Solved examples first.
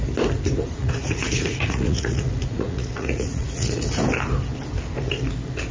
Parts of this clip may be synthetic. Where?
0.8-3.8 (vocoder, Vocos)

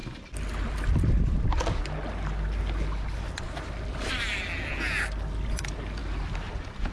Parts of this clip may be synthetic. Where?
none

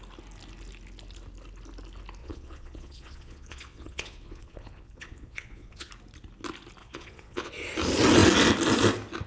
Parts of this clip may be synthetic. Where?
2.2-5.9 (vocoder, Vocos); 6.8-7.5